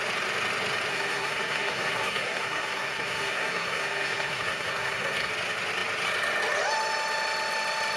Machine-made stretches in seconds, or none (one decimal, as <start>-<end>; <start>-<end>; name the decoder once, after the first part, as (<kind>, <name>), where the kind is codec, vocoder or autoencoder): 0.9-5.3 (codec, SNAC)